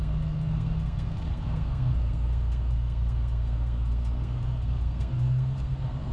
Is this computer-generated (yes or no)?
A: yes